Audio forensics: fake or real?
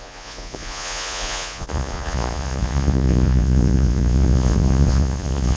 fake